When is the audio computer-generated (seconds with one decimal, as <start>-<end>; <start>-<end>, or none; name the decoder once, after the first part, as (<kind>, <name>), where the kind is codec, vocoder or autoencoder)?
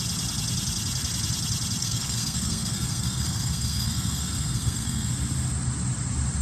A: 1.8-5.1 (codec, SNAC)